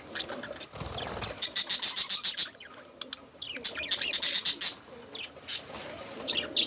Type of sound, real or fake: real